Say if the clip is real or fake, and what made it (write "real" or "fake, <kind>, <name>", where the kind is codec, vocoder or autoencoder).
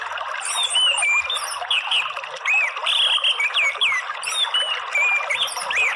real